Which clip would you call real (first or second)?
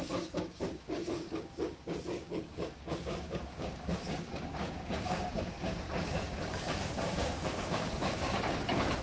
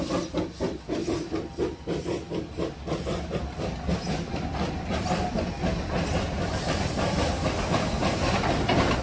second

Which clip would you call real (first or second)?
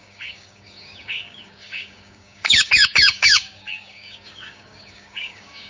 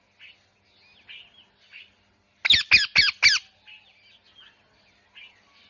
second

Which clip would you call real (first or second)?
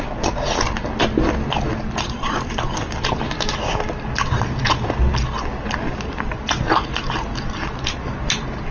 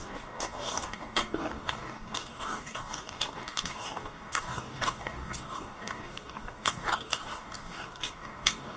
first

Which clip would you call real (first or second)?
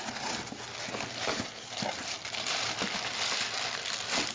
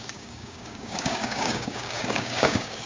first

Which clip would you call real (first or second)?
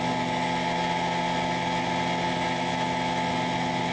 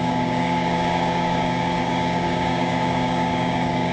first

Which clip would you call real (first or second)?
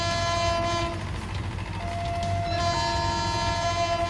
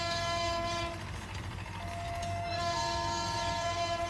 first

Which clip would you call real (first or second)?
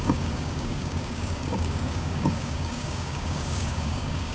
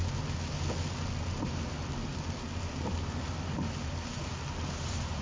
second